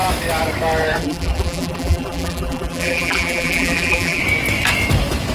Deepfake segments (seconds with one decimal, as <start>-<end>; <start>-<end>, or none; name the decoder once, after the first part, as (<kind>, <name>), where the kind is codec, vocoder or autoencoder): 1.0-4.2 (vocoder, BigVGAN v2)